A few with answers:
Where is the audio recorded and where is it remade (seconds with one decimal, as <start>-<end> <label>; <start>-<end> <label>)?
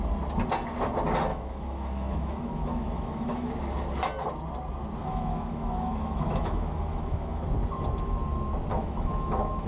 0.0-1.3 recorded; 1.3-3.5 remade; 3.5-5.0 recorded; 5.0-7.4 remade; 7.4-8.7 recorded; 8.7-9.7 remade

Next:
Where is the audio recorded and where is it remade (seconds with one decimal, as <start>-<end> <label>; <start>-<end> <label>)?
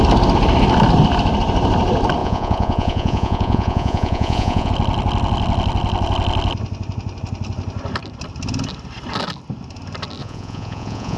0.0-2.2 recorded; 2.2-4.7 remade; 4.7-10.2 recorded; 10.2-11.2 remade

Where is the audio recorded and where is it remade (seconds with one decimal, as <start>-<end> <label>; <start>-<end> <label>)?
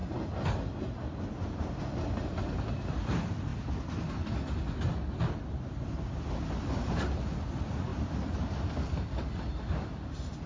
0.0-10.5 recorded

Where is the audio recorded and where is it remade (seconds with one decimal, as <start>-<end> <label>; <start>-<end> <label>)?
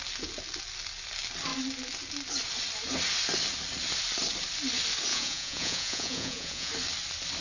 0.0-5.1 recorded; 5.1-6.7 remade; 6.7-7.4 recorded